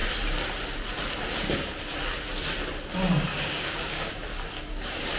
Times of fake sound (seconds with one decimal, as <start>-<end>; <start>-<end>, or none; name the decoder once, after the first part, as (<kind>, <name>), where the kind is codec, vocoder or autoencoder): 3.3-4.1 (codec, DAC)